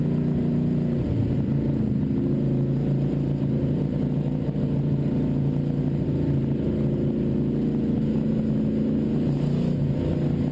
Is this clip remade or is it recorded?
recorded